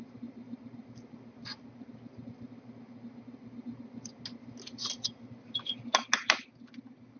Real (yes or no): yes